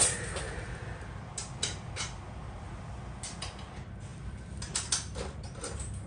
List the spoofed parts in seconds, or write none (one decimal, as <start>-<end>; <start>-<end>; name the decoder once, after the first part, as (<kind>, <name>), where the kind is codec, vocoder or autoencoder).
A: none